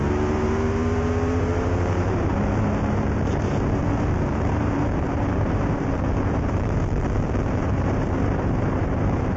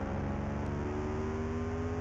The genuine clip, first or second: second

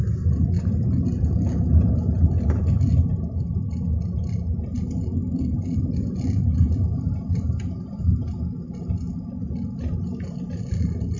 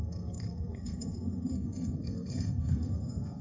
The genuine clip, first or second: first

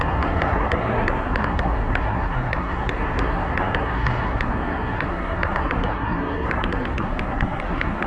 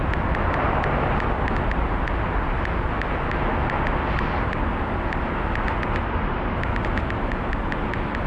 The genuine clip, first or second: second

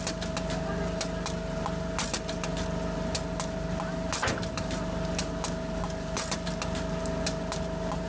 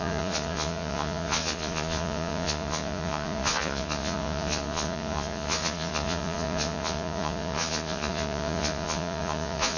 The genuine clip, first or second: first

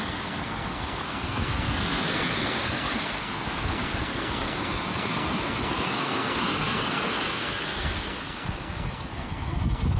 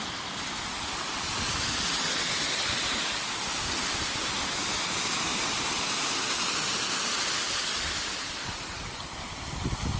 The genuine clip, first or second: second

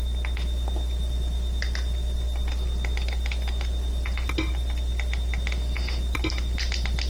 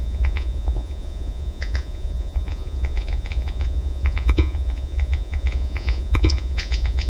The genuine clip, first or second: first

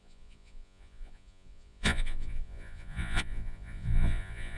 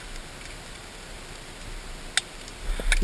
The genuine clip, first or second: second